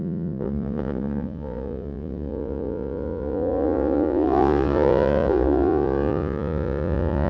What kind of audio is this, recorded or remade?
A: remade